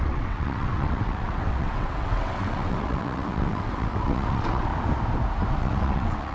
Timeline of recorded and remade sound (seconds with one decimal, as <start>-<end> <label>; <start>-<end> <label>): 0.0-4.7 remade; 4.7-5.5 recorded; 5.5-6.3 remade

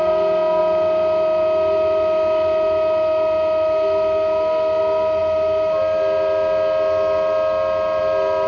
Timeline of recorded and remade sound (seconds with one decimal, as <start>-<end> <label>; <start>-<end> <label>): 0.0-8.5 recorded

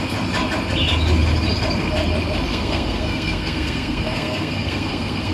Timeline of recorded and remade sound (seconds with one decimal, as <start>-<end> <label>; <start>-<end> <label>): 0.0-2.5 recorded; 2.5-5.3 remade

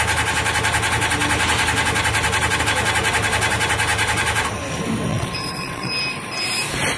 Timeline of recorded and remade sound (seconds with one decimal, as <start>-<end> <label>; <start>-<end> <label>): 0.0-5.1 recorded; 5.1-5.9 remade; 5.9-7.0 recorded

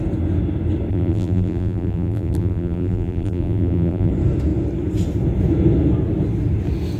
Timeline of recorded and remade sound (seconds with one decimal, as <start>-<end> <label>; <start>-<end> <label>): 0.0-0.9 recorded; 0.9-4.1 remade; 4.1-7.0 recorded

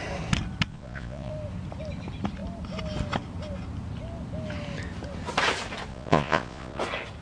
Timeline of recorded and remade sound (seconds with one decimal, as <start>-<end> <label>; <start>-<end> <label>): 0.0-0.7 recorded; 0.7-1.3 remade; 1.3-5.9 recorded; 5.9-6.8 remade; 6.8-7.2 recorded

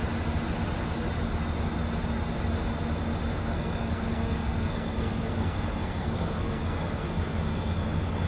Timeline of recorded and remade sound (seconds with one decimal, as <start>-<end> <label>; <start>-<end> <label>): 0.0-3.3 recorded; 3.3-8.3 remade